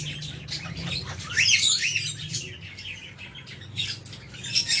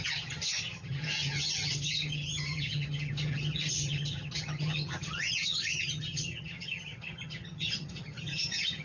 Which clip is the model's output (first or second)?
second